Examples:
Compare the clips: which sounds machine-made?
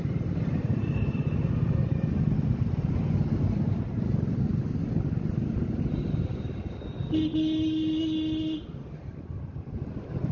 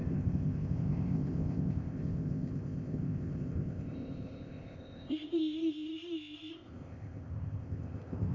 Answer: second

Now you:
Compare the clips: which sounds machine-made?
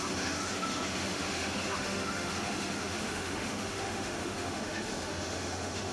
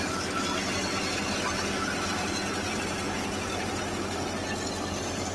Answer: first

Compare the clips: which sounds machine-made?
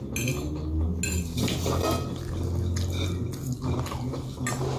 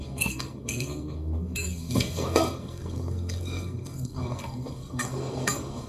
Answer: second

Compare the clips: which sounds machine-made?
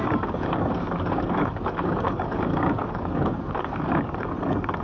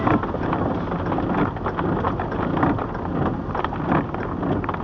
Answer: first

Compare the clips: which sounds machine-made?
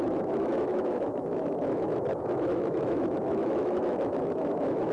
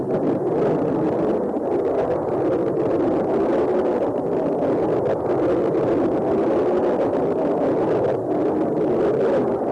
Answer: first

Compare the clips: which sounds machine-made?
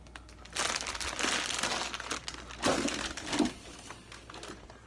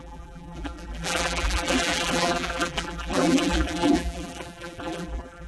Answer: second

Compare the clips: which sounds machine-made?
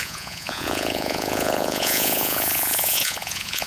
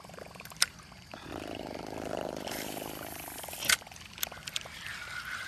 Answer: first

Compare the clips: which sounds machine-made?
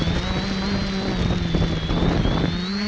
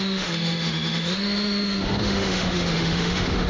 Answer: second